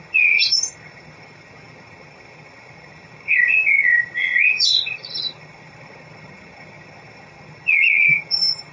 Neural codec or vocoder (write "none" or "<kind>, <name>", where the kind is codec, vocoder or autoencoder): vocoder, HiFi-GAN